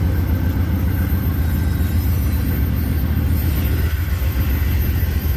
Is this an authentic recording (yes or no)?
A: yes